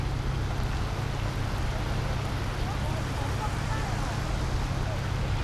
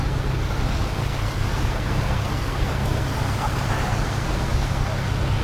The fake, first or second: second